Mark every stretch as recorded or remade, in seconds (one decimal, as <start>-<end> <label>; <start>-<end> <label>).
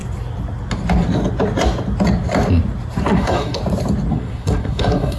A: 0.0-3.1 recorded; 3.1-3.6 remade; 3.6-4.1 recorded; 4.1-5.2 remade